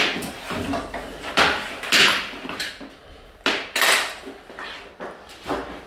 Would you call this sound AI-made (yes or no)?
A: no